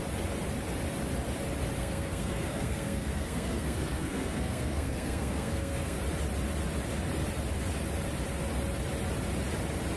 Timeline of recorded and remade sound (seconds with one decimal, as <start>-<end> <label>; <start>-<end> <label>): 0.0-1.8 recorded; 1.8-6.0 remade; 6.0-10.0 recorded